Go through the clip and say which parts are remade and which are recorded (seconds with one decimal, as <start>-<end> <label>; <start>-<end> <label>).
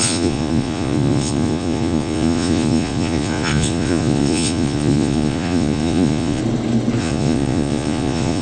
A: 0.0-6.4 remade; 6.4-7.0 recorded; 7.0-8.4 remade